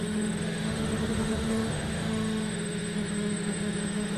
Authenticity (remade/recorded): remade